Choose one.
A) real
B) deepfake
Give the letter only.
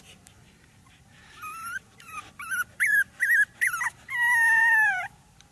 B